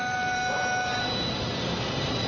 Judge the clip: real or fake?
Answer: fake